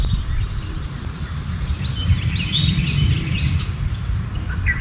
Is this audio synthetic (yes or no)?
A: yes